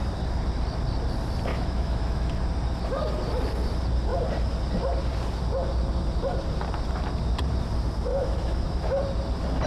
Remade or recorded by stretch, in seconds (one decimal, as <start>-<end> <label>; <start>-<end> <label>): 0.0-1.5 recorded; 1.5-2.3 remade; 2.3-8.1 recorded; 8.1-9.0 remade; 9.0-9.7 recorded